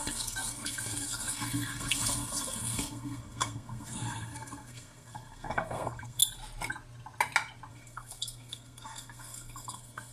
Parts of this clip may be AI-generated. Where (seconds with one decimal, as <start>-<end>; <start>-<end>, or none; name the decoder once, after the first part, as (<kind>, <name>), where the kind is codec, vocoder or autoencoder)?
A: 0.0-6.2 (codec, SNAC); 7.7-10.1